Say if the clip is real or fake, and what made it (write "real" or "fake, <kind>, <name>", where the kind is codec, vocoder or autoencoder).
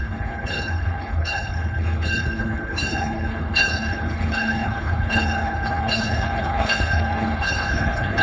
fake, codec, HILCodec